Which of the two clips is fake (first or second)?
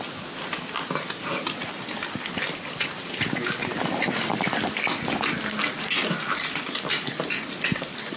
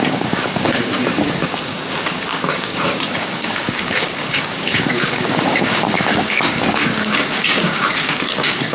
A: second